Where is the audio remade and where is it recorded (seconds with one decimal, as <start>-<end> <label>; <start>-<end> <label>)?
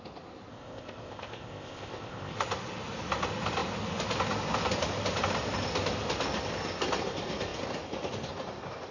0.0-0.5 recorded; 0.5-2.3 remade; 2.3-8.9 recorded